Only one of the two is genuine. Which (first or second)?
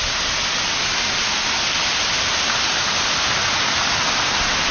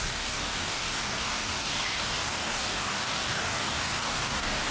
first